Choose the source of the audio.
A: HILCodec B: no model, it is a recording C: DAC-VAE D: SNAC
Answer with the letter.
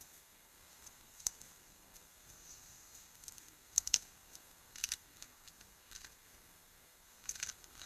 D